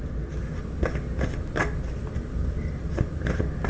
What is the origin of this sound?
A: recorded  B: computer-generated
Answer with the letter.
A